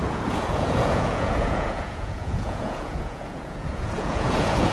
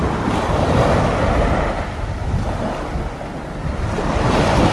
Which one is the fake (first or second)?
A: first